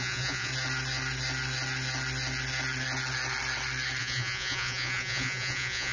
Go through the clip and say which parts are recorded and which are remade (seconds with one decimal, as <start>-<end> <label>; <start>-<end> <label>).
0.0-0.5 remade; 0.5-4.0 recorded; 4.0-5.9 remade